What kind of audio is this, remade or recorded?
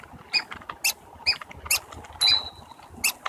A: recorded